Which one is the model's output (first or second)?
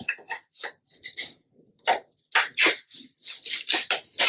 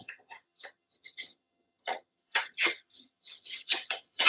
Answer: second